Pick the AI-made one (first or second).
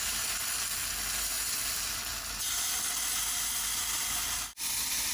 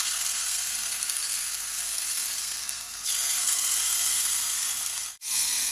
second